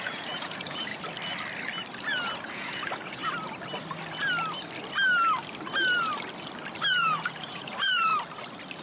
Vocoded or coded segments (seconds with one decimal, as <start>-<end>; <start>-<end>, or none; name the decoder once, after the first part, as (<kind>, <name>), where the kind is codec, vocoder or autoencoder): 0.0-0.9 (vocoder, Vocos); 2.4-3.2; 6.9-8.1